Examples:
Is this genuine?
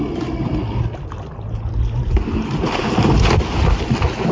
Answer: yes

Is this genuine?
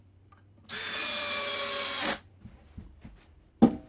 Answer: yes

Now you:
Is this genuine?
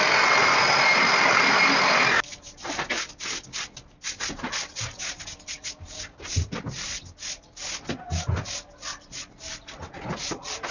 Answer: yes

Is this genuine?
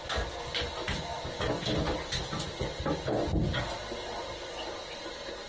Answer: yes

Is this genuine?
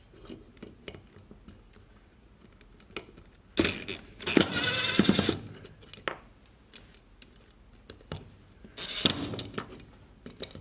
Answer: yes